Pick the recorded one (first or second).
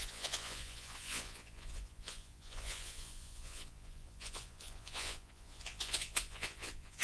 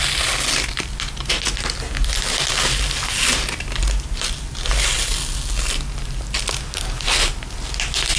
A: second